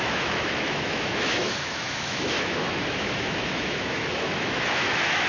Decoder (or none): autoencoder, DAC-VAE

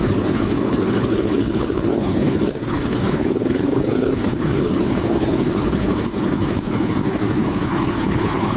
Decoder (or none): codec, HILCodec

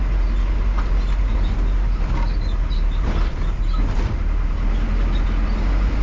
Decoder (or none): none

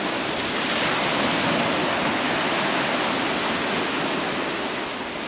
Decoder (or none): none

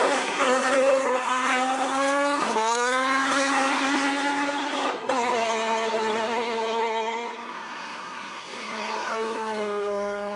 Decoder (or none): codec, SNAC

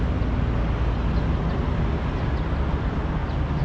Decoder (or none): none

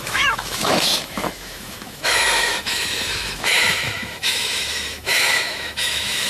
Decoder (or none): autoencoder, DAC-VAE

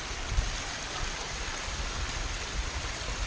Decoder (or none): none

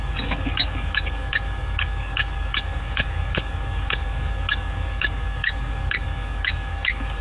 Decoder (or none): codec, DAC